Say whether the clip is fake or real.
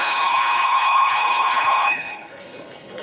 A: fake